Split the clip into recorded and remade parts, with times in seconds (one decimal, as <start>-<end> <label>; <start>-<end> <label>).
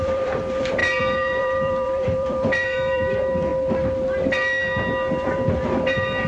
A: 0.0-3.5 remade; 3.5-5.1 recorded; 5.1-6.3 remade